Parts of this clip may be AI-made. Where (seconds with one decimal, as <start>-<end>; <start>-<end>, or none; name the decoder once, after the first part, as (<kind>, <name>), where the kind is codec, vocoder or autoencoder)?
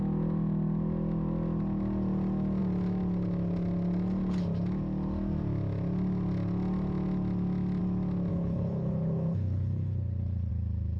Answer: 8.3-10.5 (codec, HILCodec)